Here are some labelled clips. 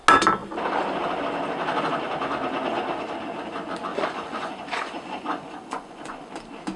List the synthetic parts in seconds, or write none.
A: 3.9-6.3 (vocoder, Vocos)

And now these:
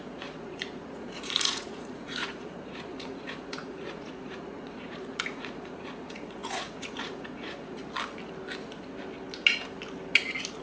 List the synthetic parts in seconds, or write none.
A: 0.0-7.8 (vocoder, Vocos)